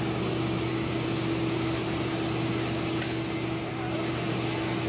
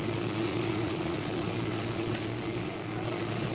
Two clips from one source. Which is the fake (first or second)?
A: second